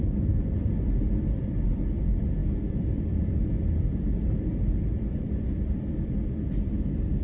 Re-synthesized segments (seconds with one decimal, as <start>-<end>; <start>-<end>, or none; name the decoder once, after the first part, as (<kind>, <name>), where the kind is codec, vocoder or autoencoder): 0.0-1.7 (vocoder, BigVGAN v2); 2.4-6.7

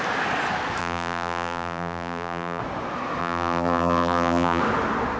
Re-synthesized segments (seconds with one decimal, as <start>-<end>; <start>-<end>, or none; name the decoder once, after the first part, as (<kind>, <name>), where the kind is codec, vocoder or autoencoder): 0.8-2.6 (vocoder, BigVGAN v2); 3.2-4.6

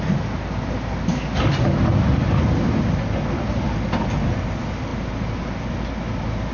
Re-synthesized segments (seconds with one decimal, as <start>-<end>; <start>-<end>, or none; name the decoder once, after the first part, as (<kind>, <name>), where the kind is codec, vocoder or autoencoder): none

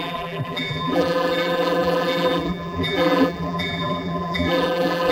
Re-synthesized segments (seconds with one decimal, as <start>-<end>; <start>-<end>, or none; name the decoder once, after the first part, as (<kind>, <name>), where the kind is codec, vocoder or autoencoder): 0.0-5.1 (vocoder, BigVGAN v2)

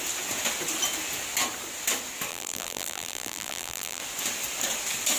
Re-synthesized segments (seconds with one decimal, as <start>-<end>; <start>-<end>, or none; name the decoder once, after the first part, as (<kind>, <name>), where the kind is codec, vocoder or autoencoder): 2.3-4.0 (vocoder, BigVGAN v2)

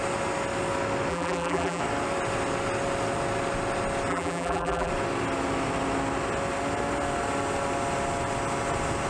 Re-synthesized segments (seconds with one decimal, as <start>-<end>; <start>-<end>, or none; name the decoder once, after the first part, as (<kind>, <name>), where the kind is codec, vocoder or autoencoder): 1.1-1.8 (vocoder, BigVGAN v2); 4.1-4.9

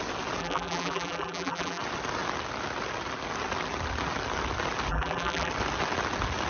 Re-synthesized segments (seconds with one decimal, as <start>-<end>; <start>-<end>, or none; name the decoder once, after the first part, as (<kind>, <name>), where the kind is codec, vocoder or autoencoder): 0.4-1.8 (vocoder, BigVGAN v2); 4.9-5.5

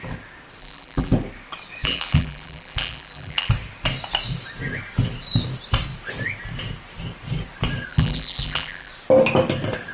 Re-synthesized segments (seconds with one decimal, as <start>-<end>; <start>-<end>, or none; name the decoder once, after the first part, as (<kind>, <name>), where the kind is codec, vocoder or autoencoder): 0.6-1.1 (vocoder, BigVGAN v2); 1.8-3.5; 7.9-8.9